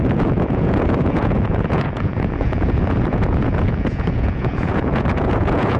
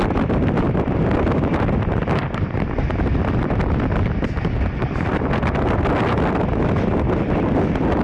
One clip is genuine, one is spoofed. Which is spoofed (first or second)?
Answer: first